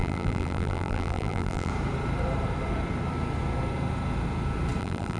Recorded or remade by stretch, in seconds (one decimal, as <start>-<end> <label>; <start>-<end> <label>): 0.0-1.7 remade; 1.7-4.8 recorded; 4.8-5.2 remade